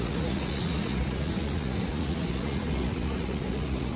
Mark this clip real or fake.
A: fake